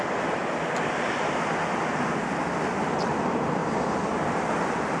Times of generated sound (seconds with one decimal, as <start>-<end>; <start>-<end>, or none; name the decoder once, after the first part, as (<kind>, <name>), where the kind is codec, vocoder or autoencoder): 0.0-0.4 (vocoder, BigVGAN v2); 2.0-3.6; 4.6-5.0